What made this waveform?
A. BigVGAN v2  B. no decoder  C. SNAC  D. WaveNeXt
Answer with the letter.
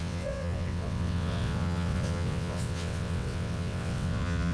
D